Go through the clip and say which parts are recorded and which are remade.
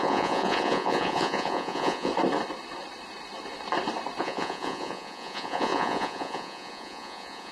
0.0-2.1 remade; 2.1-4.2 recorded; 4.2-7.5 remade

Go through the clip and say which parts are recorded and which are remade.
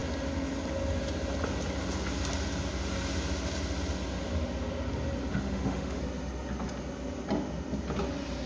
0.0-5.3 recorded; 5.3-6.0 remade; 6.0-8.5 recorded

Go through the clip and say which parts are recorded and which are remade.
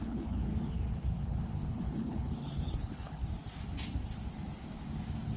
0.0-0.5 remade; 0.5-1.6 recorded; 1.6-3.2 remade; 3.2-5.4 recorded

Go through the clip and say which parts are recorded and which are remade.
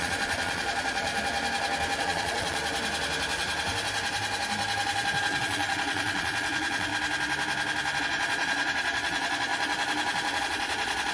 0.0-1.1 remade; 1.1-2.0 recorded; 2.0-2.6 remade; 2.6-5.2 recorded; 5.2-6.9 remade; 6.9-8.0 recorded; 8.0-9.5 remade; 9.5-10.4 recorded; 10.4-11.1 remade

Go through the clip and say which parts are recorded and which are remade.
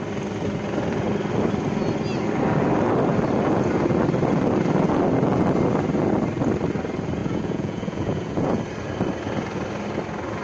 0.0-7.2 recorded; 7.2-8.6 remade; 8.6-10.4 recorded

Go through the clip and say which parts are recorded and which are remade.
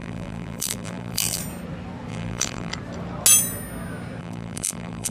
0.0-1.4 remade; 1.4-2.1 recorded; 2.1-2.7 remade; 2.7-4.2 recorded; 4.2-5.1 remade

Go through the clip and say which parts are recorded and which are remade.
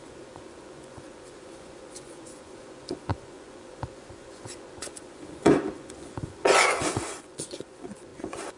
0.0-8.6 remade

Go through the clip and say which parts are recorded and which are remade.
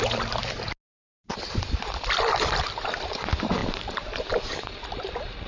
0.0-1.3 recorded; 1.3-3.2 remade; 3.2-3.6 recorded; 3.6-4.5 remade; 4.5-5.5 recorded